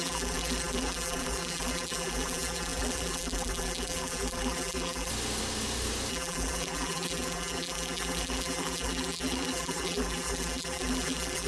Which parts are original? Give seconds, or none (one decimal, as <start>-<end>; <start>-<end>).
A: 5.1-6.1